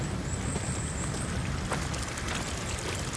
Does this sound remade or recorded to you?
recorded